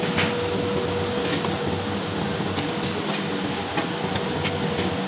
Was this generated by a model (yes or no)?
no